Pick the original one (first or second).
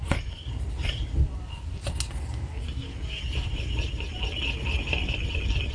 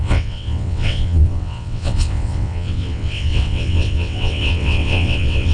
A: first